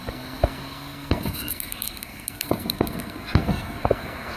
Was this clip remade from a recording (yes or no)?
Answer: yes